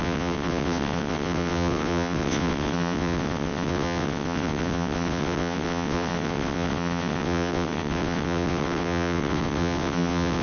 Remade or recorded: remade